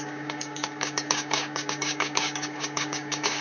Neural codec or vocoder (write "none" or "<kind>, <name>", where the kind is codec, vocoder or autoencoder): codec, DAC